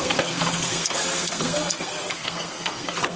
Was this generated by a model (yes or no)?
yes